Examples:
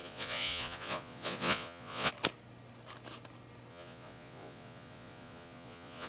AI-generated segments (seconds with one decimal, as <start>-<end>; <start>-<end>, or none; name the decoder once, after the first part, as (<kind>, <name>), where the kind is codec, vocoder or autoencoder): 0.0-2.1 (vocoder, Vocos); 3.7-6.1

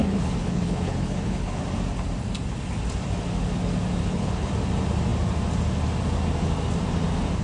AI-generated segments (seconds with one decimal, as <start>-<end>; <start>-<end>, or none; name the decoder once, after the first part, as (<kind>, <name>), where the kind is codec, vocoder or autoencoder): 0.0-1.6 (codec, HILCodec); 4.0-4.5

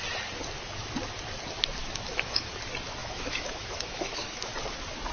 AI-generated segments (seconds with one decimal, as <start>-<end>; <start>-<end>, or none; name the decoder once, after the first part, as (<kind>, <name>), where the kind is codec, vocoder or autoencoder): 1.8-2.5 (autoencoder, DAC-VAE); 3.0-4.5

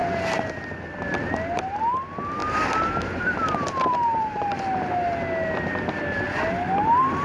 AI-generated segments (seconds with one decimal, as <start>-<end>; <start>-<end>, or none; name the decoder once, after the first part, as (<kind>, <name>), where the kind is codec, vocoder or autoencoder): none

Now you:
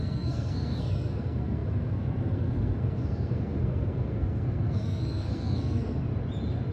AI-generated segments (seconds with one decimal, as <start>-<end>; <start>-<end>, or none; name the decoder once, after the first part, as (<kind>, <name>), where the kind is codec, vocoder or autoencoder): 0.0-6.1 (codec, SNAC)

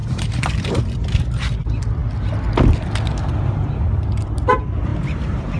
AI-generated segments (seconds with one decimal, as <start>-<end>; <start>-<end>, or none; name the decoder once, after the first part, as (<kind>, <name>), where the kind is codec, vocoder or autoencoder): 0.0-0.8 (vocoder, BigVGAN v2); 4.9-5.6

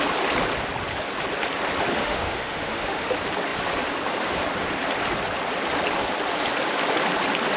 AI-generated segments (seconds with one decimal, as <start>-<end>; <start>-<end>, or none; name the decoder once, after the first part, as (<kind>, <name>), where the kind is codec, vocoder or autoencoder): 1.9-3.1 (autoencoder, DAC-VAE)